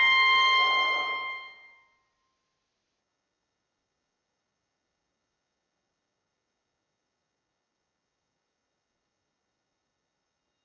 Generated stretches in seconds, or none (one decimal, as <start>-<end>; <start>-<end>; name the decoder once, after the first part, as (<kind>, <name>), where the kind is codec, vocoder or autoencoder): 0.0-1.0 (codec, DAC); 3.0-10.6